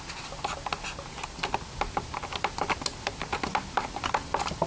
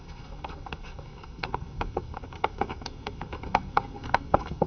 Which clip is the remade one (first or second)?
second